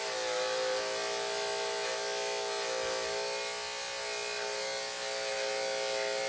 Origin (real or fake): real